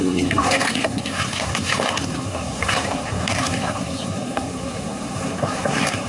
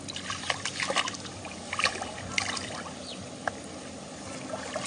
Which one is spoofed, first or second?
first